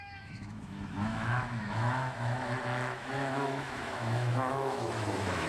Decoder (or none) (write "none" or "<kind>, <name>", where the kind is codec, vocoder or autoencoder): autoencoder, DAC-VAE